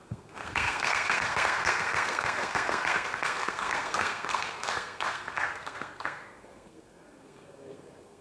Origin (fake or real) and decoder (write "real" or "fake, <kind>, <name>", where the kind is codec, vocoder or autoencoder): fake, codec, SNAC